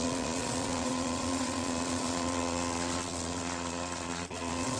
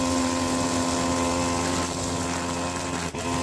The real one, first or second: second